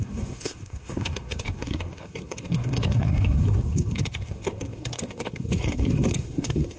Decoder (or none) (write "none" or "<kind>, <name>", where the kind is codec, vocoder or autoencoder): codec, SNAC